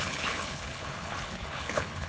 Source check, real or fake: fake